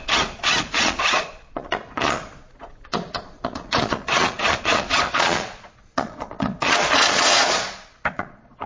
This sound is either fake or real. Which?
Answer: fake